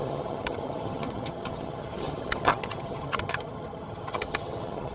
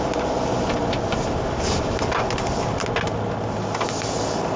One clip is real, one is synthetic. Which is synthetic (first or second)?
first